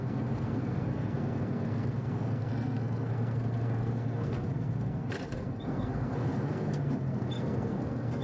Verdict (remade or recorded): remade